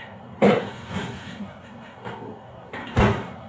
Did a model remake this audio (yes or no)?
yes